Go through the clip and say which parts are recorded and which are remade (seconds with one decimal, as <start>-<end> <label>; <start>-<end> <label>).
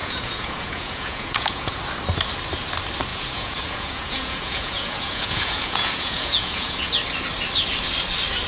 0.0-1.8 remade; 1.8-3.1 recorded; 3.1-6.9 remade; 6.9-8.5 recorded